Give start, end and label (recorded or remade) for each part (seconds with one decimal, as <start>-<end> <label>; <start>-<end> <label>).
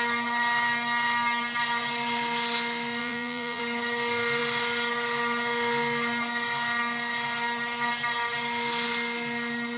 0.0-3.0 recorded; 3.0-3.6 remade; 3.6-9.8 recorded